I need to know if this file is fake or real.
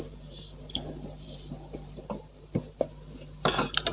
fake